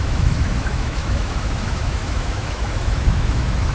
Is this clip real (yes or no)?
no